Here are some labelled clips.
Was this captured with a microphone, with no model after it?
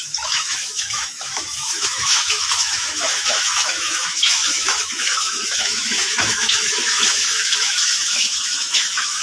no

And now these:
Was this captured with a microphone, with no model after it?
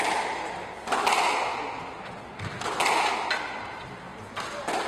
yes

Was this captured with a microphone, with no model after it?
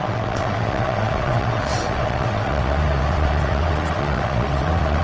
no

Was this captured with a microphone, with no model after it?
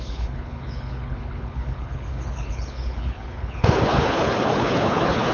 no